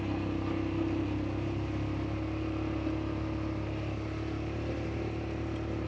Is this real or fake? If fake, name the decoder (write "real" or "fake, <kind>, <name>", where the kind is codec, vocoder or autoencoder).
real